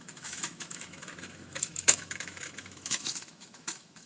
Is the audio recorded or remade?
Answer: remade